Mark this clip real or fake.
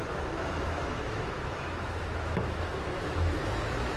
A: fake